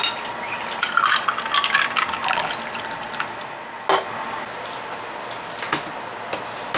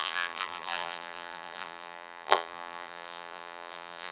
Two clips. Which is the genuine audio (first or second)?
first